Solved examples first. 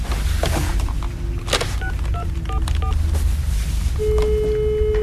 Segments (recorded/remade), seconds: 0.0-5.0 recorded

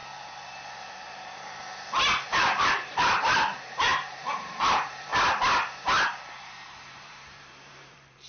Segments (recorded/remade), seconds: 0.0-2.3 recorded; 2.3-5.1 remade; 5.1-6.1 recorded; 6.1-8.3 remade

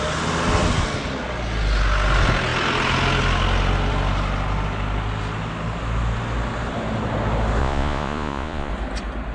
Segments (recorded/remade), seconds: 0.0-7.6 recorded; 7.6-8.7 remade; 8.7-9.3 recorded

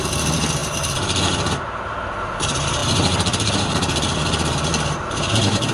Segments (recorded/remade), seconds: 0.0-5.7 remade

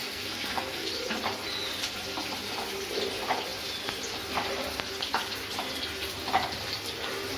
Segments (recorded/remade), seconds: 0.0-0.9 remade; 0.9-7.4 recorded

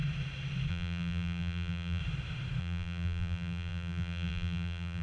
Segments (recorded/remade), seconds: 0.0-0.7 recorded; 0.7-2.0 remade; 2.0-2.6 recorded; 2.6-5.0 remade

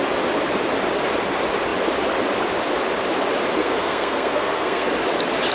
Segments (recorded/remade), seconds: 0.0-3.6 recorded; 3.6-4.9 remade; 4.9-5.5 recorded

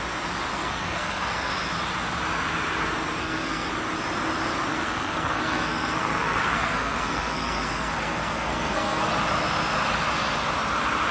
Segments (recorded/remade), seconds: 0.0-0.5 recorded; 0.5-1.5 remade; 1.5-3.2 recorded; 3.2-3.7 remade; 3.7-4.7 recorded; 4.7-9.1 remade; 9.1-11.1 recorded